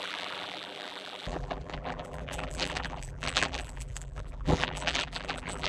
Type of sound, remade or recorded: remade